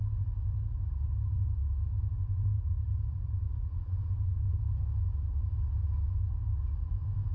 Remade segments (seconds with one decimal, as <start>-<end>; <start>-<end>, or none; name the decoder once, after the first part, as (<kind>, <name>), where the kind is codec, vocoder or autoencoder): none